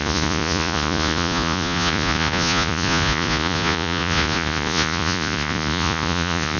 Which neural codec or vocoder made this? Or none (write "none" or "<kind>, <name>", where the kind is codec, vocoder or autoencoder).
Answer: vocoder, Vocos